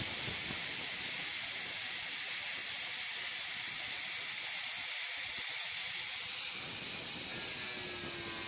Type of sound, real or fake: real